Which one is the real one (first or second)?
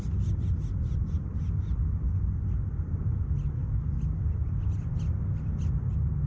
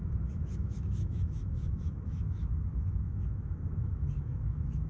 first